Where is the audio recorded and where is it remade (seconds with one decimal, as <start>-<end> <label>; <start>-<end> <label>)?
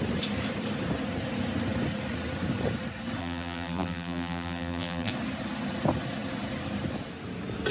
0.0-3.2 recorded; 3.2-5.1 remade; 5.1-7.7 recorded